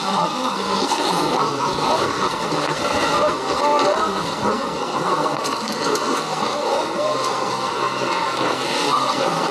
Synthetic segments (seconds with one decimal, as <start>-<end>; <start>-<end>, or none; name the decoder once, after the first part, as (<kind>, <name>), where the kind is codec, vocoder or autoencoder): 0.0-9.5 (codec, SNAC)